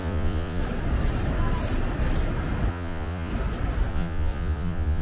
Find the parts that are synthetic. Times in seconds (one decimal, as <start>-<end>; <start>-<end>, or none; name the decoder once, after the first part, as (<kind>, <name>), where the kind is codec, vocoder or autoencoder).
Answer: 0.0-0.6 (vocoder, Vocos); 2.7-3.3; 3.9-5.0